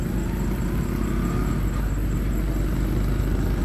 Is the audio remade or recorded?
recorded